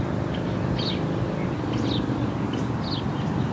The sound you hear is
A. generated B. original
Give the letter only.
B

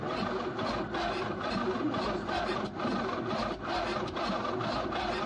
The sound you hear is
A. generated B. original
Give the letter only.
B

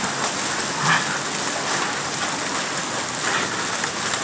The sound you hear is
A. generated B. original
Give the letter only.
B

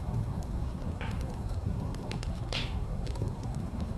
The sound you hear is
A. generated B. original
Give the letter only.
A